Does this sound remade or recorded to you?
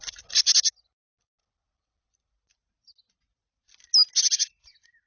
recorded